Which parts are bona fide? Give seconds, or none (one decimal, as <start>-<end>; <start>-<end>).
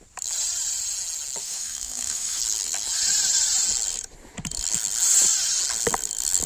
0.0-1.4; 2.4-6.5